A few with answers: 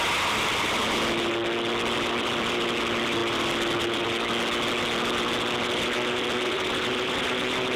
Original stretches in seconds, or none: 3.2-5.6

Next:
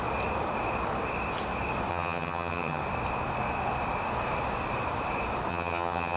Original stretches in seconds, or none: 0.0-1.9; 2.8-5.5

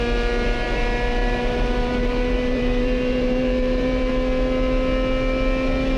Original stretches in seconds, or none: 0.0-1.2; 4.1-6.0

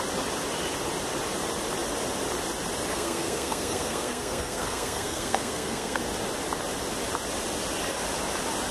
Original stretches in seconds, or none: 0.0-2.9; 6.0-8.7

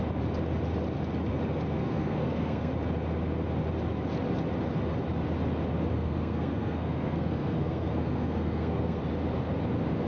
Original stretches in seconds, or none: 0.0-1.8; 2.7-5.9; 9.0-10.1

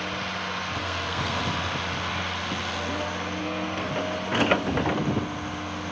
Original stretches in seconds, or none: 0.0-0.8; 1.4-3.4; 3.9-5.9

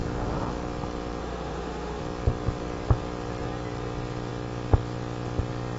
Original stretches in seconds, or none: 0.0-1.2; 2.0-5.8

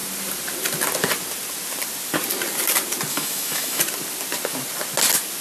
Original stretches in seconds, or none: 0.0-3.1; 3.8-5.4